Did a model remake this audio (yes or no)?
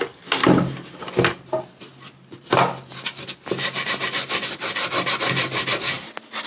no